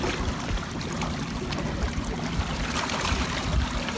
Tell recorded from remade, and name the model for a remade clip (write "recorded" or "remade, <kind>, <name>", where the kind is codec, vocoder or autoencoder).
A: recorded